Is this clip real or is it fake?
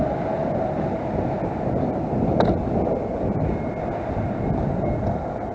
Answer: real